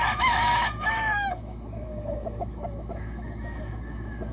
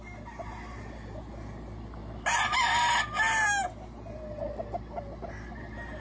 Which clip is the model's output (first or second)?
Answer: first